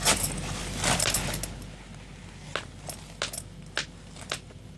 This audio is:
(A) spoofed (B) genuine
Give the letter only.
B